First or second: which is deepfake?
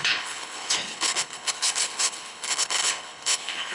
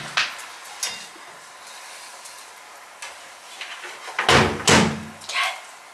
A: first